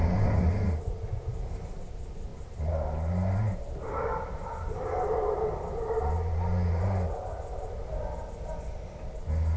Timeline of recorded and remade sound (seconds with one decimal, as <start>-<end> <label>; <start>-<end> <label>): 0.0-9.6 recorded